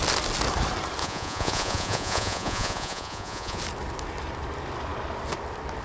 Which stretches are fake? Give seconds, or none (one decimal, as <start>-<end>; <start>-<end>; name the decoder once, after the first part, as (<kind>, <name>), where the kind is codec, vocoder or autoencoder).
1.0-3.6 (vocoder, Vocos)

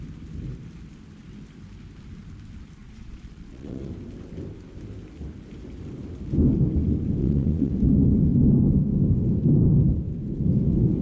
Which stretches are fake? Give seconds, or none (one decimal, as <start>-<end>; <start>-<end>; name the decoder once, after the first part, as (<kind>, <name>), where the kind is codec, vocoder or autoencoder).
2.8-3.9 (vocoder, Vocos); 7.2-7.7

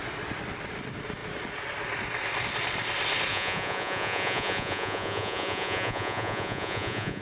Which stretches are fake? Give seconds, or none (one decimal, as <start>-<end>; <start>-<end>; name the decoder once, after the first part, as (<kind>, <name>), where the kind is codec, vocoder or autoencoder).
3.3-7.2 (vocoder, Vocos)